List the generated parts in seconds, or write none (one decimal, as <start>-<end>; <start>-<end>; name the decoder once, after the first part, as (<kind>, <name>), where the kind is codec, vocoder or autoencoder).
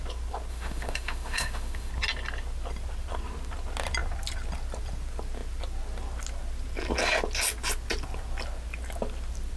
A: 0.5-1.9 (autoencoder, DAC-VAE)